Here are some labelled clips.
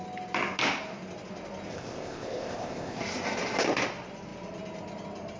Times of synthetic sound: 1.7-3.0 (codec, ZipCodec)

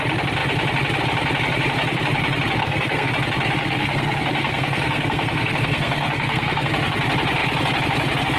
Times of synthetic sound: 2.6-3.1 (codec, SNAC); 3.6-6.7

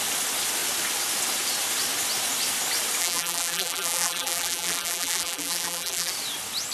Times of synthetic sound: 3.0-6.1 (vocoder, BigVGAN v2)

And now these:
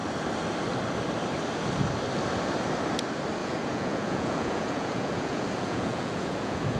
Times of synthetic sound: 3.4-6.8 (vocoder, Vocos)

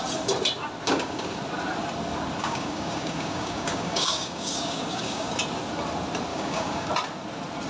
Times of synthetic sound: 0.9-1.4 (codec, DAC); 2.4-5.3; 6.3-6.9